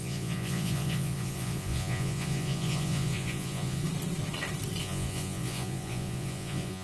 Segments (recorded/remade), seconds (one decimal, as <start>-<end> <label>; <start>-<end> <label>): 0.0-3.8 remade; 3.8-4.8 recorded; 4.8-6.8 remade